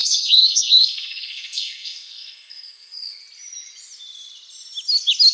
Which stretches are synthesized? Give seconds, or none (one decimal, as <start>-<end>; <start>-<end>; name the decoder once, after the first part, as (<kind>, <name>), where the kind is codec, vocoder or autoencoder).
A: 0.0-3.2 (codec, SNAC)